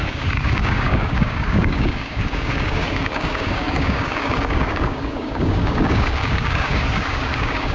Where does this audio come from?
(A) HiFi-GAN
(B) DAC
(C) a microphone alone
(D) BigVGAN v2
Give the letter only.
B